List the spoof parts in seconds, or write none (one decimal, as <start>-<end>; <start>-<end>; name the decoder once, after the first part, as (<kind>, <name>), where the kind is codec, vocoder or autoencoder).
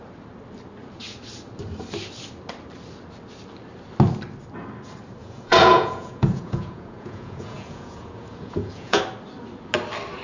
5.2-9.0 (vocoder, Vocos)